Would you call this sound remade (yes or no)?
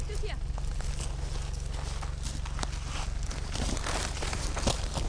no